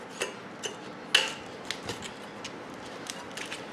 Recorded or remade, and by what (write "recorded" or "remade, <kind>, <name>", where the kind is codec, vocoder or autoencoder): recorded